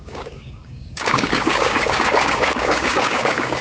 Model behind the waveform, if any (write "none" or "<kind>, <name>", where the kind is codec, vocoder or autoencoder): codec, DAC